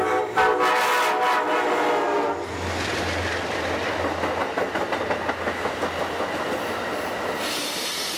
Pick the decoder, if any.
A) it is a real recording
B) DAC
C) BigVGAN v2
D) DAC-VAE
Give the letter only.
A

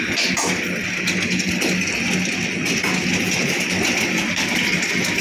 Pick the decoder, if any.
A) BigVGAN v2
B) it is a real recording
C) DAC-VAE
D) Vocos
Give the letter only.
B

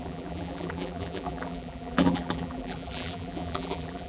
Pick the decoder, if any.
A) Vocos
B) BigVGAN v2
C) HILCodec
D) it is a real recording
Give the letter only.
B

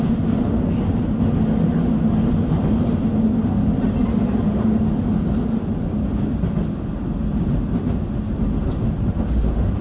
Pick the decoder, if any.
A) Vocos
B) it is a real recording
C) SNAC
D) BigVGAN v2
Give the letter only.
B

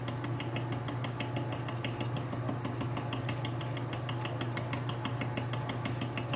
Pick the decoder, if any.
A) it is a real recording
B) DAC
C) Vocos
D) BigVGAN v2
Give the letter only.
A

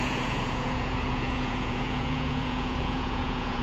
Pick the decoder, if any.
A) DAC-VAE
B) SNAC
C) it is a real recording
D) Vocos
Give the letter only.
D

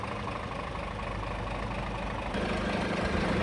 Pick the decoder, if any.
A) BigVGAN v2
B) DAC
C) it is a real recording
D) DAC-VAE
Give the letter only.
C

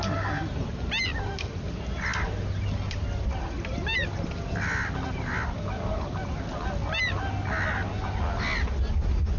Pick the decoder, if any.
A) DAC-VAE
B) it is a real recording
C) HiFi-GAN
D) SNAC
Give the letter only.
B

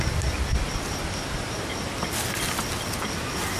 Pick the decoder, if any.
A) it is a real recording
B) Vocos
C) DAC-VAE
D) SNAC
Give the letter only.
A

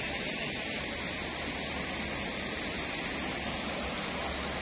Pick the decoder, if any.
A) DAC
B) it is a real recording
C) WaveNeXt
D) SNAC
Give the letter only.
B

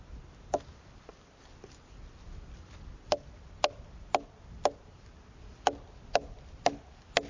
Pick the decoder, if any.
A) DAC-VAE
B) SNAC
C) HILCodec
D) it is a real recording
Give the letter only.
D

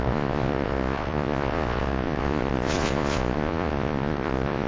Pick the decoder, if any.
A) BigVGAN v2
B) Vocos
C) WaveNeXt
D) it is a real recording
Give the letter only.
B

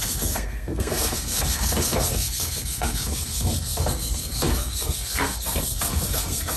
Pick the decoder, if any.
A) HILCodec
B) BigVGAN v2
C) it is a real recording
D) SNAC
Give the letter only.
D